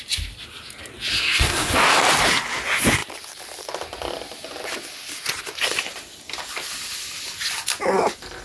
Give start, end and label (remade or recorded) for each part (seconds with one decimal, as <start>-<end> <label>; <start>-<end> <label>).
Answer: 0.0-1.1 recorded; 1.1-1.7 remade; 1.7-8.4 recorded